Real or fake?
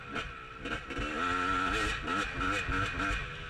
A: real